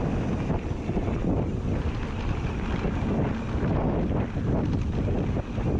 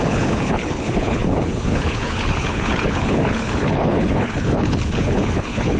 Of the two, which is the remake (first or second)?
second